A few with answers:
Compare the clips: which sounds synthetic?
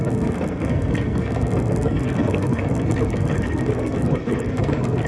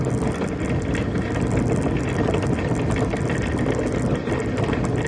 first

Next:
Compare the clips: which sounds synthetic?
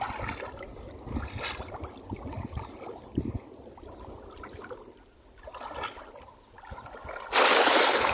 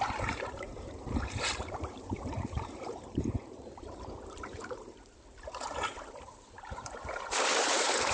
second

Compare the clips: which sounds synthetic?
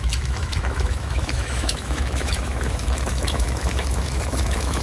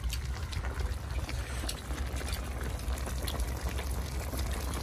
first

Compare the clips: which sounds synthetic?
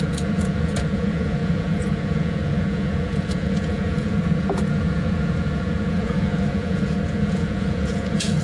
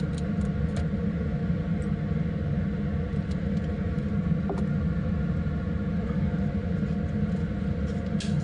first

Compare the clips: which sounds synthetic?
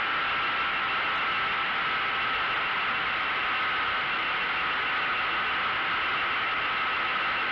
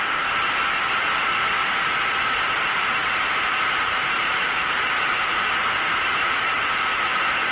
second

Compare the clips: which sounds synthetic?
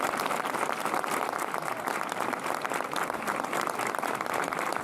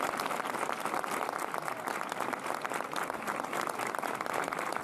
first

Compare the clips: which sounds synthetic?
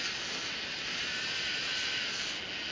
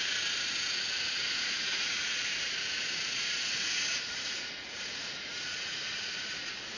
second